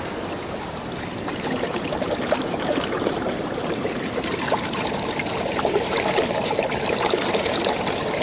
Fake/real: fake